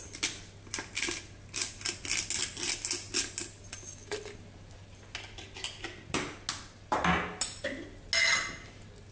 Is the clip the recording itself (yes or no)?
yes